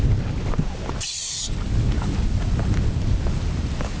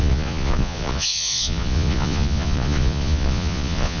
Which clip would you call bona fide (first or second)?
first